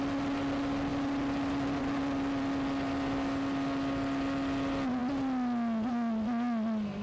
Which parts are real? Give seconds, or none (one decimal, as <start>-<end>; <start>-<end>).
0.0-7.0